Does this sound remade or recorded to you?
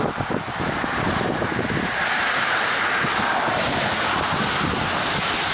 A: recorded